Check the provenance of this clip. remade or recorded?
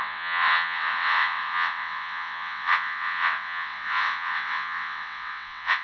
remade